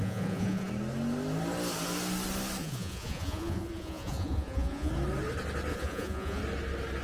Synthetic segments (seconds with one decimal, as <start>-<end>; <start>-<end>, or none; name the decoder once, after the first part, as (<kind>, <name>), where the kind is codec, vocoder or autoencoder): 0.0-0.7 (vocoder, Vocos); 2.6-4.9; 5.7-6.4